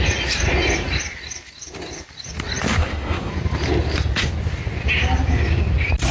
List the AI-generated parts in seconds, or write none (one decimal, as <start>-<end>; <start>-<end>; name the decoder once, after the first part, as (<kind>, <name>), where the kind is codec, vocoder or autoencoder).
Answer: 2.8-3.3 (codec, SNAC)